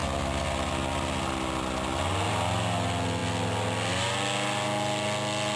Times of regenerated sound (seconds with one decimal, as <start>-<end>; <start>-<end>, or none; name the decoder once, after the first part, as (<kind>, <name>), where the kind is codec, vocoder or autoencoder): none